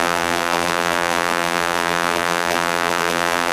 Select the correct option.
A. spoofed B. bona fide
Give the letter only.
A